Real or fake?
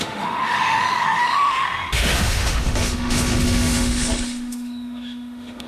fake